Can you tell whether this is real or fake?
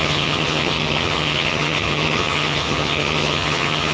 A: fake